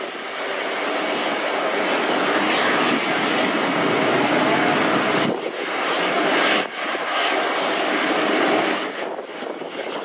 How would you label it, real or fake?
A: real